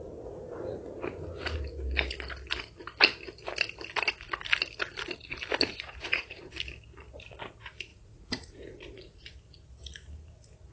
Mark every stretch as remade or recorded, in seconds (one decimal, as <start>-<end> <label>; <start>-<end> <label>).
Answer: 0.0-5.7 recorded; 5.7-6.5 remade; 6.5-7.9 recorded; 7.9-9.2 remade; 9.2-10.7 recorded